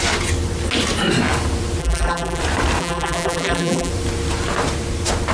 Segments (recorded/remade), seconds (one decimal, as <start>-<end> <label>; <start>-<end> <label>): 0.0-1.8 recorded; 1.8-2.4 remade; 2.4-2.8 recorded; 2.8-3.9 remade; 3.9-5.3 recorded